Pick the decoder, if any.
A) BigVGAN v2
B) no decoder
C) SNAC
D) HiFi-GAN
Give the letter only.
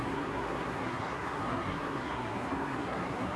C